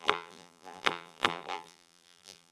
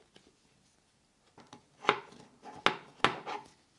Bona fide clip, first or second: second